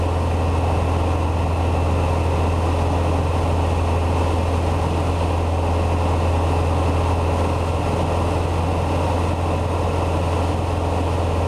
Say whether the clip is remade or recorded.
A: recorded